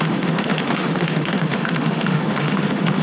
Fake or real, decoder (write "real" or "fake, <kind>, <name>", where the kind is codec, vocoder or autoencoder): fake, autoencoder, DAC-VAE